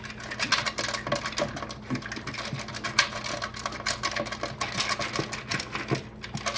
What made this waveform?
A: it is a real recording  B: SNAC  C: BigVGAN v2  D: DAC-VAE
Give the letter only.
A